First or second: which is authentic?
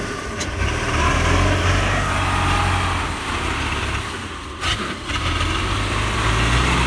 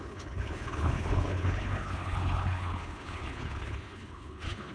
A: first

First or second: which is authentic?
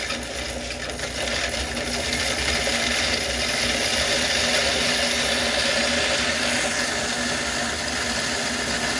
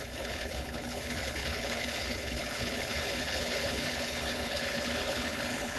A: first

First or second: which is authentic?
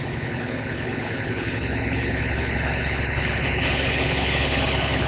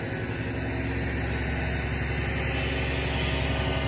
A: second